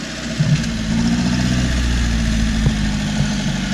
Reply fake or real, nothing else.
real